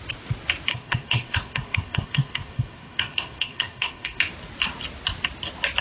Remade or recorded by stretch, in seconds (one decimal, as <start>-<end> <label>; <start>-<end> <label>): 0.0-0.7 recorded; 0.7-4.2 remade; 4.2-5.8 recorded